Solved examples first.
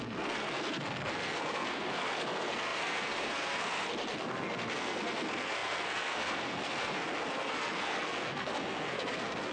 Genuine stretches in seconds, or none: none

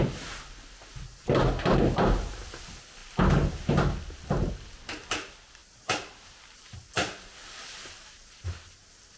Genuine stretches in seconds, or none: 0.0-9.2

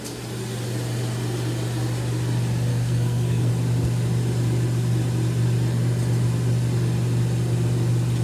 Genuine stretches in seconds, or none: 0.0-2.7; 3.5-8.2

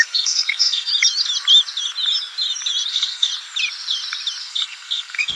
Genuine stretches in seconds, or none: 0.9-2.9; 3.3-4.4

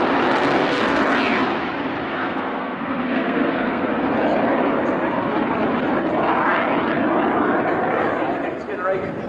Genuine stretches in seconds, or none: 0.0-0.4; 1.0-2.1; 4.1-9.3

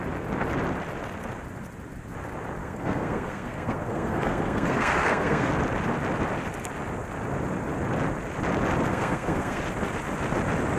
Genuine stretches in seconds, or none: 0.0-2.6; 5.5-8.9; 9.6-10.8